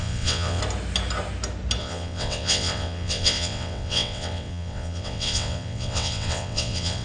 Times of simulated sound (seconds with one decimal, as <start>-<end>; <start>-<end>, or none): 0.0-0.6; 1.8-7.0